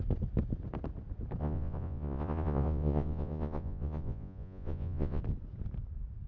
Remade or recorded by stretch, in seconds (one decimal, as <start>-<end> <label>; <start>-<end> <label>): 0.0-1.4 recorded; 1.4-5.2 remade; 5.2-6.3 recorded

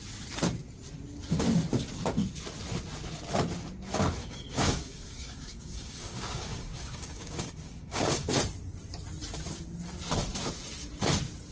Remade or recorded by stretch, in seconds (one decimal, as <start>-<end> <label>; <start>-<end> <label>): 0.0-4.2 recorded; 4.2-8.3 remade; 8.3-11.5 recorded

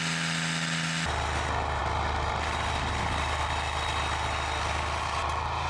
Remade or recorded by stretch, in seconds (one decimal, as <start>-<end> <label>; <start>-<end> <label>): 0.0-5.7 recorded

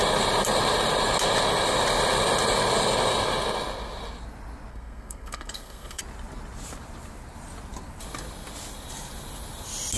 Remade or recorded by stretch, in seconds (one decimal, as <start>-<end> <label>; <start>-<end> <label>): 0.0-4.7 recorded; 4.7-6.0 remade; 6.0-10.0 recorded

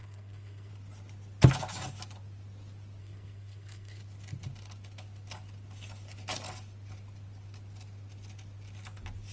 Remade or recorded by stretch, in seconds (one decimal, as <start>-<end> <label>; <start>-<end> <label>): 0.0-0.7 remade; 0.7-3.0 recorded; 3.0-4.0 remade; 4.0-9.3 recorded